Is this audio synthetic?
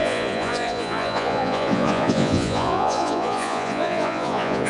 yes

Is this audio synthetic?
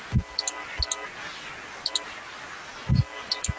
no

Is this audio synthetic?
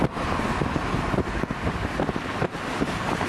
no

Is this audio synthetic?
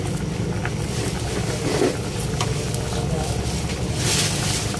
no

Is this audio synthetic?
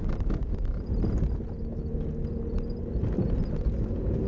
no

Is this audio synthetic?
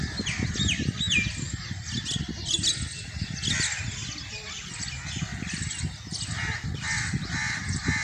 no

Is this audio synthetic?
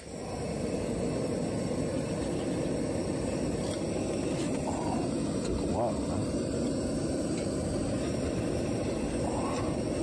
no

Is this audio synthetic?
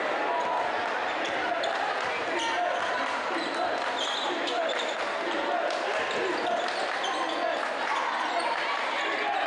no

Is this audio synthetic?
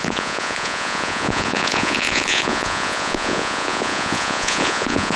yes